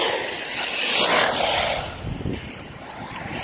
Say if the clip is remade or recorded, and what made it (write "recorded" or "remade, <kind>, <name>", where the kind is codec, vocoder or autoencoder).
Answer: recorded